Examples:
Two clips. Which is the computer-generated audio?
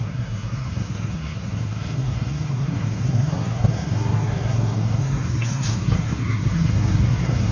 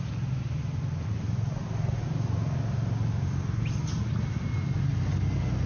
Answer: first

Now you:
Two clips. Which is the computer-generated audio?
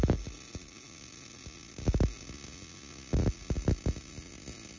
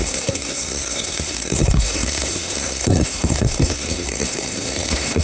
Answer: second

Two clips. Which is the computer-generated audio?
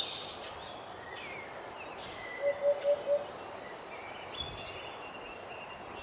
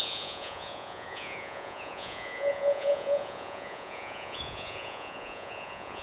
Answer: second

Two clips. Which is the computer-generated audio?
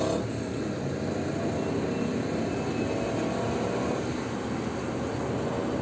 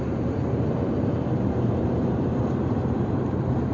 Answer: second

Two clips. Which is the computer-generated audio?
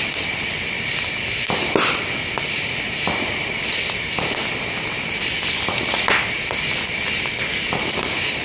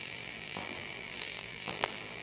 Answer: second